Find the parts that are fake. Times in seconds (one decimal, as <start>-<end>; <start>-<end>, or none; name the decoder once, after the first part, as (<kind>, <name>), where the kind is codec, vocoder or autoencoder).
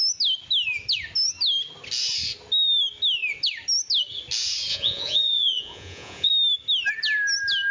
4.7-6.3 (vocoder, Vocos)